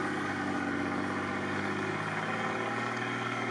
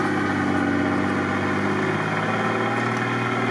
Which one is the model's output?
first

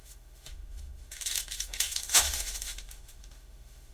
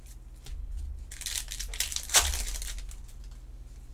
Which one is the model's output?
first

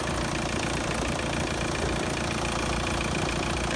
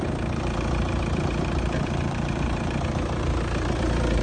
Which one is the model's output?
second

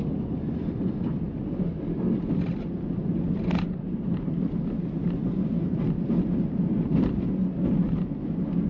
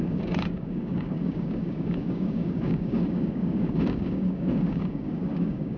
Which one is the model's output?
second